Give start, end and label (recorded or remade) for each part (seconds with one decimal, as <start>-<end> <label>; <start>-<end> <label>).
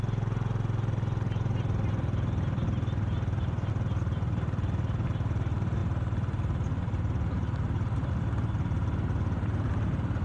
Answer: 0.0-10.2 recorded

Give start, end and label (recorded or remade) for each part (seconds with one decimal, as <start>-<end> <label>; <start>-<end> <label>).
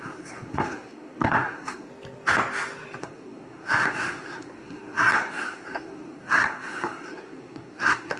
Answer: 0.0-1.9 remade; 1.9-3.0 recorded; 3.0-8.2 remade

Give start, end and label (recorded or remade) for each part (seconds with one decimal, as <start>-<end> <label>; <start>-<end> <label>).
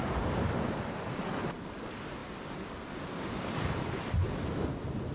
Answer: 0.0-5.1 recorded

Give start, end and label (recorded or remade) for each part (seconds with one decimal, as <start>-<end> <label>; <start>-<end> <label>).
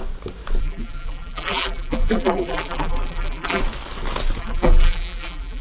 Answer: 0.0-0.6 recorded; 0.6-3.6 remade; 3.6-4.4 recorded; 4.4-5.6 remade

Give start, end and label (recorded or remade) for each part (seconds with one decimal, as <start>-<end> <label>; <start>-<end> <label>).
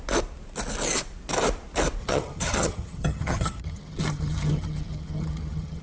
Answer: 0.0-2.0 recorded; 2.0-5.8 remade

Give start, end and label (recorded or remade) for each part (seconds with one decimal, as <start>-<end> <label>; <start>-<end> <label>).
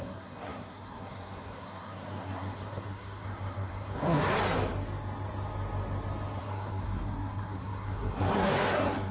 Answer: 0.0-4.3 remade; 4.3-6.4 recorded; 6.4-9.1 remade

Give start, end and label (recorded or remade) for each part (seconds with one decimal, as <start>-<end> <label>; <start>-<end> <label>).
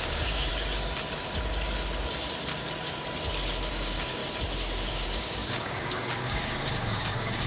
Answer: 0.0-0.5 remade; 0.5-3.7 recorded; 3.7-4.2 remade; 4.2-4.9 recorded; 4.9-7.5 remade